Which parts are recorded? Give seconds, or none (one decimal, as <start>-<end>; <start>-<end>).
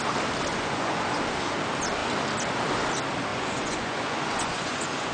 0.0-0.5; 1.2-3.3